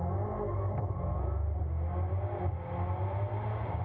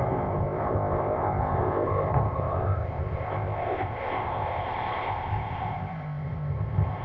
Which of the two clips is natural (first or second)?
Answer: first